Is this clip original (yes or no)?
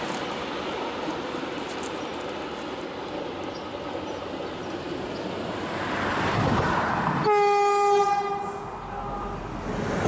yes